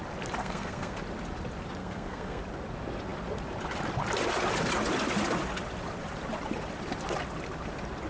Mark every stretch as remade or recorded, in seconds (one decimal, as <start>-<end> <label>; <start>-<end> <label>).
0.0-0.4 recorded; 0.4-1.0 remade; 1.0-1.8 recorded; 1.8-2.4 remade; 2.4-8.1 recorded